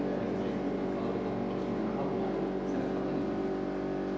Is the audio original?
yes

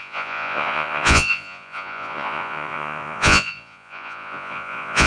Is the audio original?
no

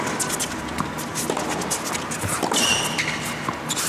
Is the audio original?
yes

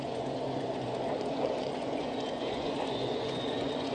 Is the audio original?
no